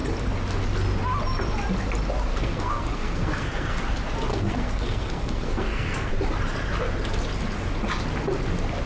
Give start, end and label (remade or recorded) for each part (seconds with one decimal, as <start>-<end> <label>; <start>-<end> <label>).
0.0-2.3 recorded; 2.3-3.8 remade; 3.8-4.3 recorded; 4.3-6.1 remade; 6.1-8.9 recorded